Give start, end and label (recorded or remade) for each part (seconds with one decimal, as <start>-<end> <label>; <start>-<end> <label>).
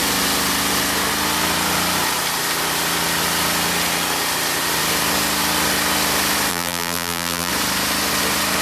0.0-6.5 recorded; 6.5-7.5 remade; 7.5-8.6 recorded